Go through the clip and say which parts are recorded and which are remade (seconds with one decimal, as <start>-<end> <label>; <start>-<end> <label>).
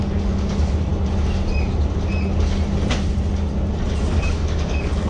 0.0-0.9 remade; 0.9-4.0 recorded; 4.0-5.1 remade